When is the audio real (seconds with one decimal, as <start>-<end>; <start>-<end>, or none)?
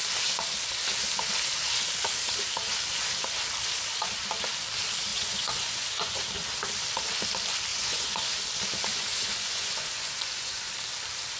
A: 0.0-5.1; 6.2-7.7; 8.4-8.9; 10.7-11.4